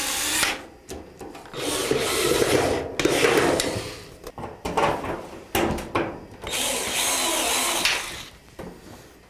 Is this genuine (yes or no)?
yes